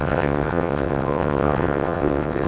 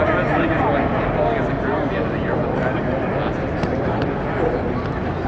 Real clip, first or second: second